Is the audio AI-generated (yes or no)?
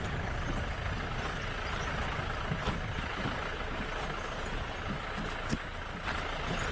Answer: no